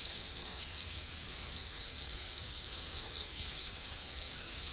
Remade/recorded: remade